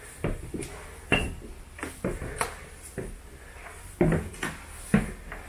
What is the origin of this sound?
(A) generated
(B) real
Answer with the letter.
B